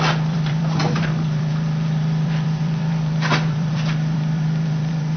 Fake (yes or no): yes